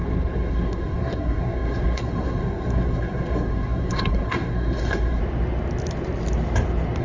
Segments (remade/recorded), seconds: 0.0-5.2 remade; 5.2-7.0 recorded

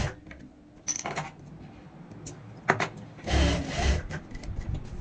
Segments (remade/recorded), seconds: 0.0-5.0 recorded

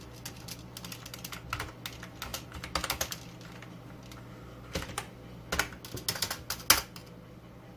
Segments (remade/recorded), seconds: 0.0-7.8 recorded